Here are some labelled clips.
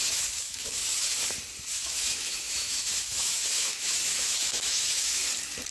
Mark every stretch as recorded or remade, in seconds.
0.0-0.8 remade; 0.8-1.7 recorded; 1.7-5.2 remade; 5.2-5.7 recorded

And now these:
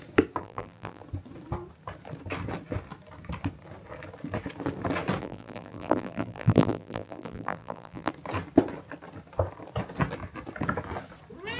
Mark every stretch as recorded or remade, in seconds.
0.0-0.4 recorded; 0.4-1.0 remade; 1.0-5.2 recorded; 5.2-8.1 remade; 8.1-11.6 recorded

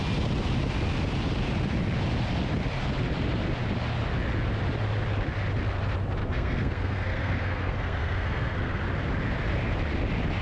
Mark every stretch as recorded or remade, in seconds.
0.0-6.2 recorded; 6.2-8.8 remade; 8.8-10.4 recorded

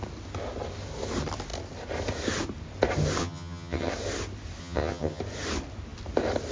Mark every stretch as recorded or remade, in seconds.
0.0-3.2 recorded; 3.2-3.9 remade; 3.9-4.6 recorded; 4.6-5.2 remade; 5.2-6.5 recorded

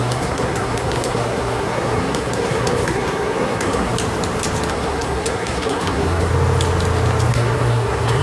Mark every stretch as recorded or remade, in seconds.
0.0-3.9 remade; 3.9-4.7 recorded; 4.7-6.3 remade; 6.3-7.3 recorded; 7.3-8.2 remade

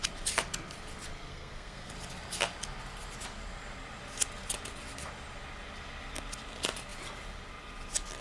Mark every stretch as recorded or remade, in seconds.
0.0-1.3 recorded; 1.3-1.9 remade; 1.9-8.2 recorded

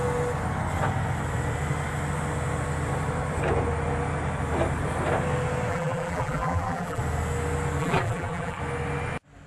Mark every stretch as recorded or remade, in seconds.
0.0-5.7 recorded; 5.7-7.0 remade; 7.0-7.8 recorded; 7.8-8.6 remade; 8.6-9.5 recorded